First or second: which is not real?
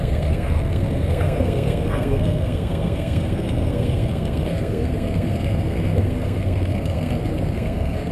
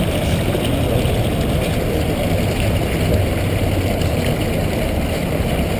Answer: first